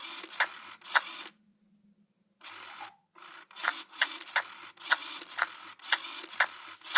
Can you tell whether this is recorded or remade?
recorded